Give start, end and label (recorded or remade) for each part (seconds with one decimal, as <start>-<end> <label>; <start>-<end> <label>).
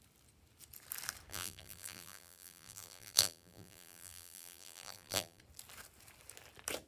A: 0.0-1.3 recorded; 1.3-5.4 remade; 5.4-6.9 recorded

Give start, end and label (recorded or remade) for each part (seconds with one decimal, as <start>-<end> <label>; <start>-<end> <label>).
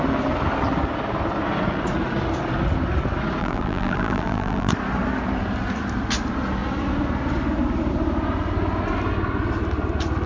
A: 0.0-3.4 recorded; 3.4-4.7 remade; 4.7-10.3 recorded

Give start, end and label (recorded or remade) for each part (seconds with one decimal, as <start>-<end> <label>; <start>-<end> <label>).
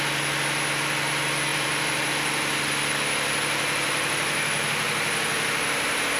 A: 0.0-1.5 recorded; 1.5-2.1 remade; 2.1-6.2 recorded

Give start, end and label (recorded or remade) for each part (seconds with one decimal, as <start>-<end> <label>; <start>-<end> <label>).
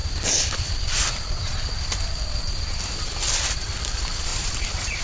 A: 0.0-5.0 recorded